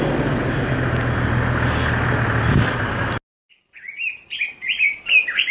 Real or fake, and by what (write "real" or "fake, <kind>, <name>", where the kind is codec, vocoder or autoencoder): real